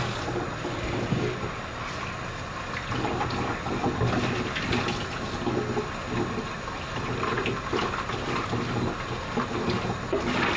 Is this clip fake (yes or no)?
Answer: no